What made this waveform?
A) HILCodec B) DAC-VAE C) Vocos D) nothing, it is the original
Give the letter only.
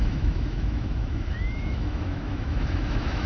B